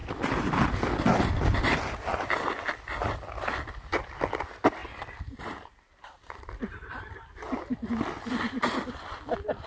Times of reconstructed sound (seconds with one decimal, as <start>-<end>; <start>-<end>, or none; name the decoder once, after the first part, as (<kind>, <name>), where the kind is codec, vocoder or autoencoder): none